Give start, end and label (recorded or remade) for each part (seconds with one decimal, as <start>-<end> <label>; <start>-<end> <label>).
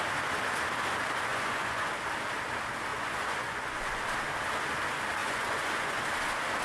0.0-1.3 recorded; 1.3-1.9 remade; 1.9-2.9 recorded; 2.9-4.0 remade; 4.0-5.2 recorded; 5.2-6.0 remade; 6.0-6.6 recorded